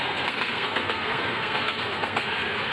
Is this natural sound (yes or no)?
no